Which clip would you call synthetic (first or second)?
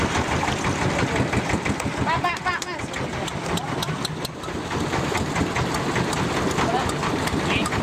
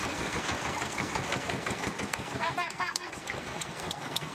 second